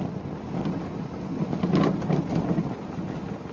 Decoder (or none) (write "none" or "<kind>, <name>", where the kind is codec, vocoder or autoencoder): none